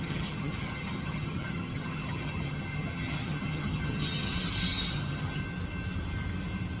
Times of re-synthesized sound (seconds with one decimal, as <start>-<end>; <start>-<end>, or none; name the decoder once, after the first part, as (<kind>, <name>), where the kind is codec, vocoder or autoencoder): 0.0-4.3 (vocoder, HiFi-GAN); 4.9-5.4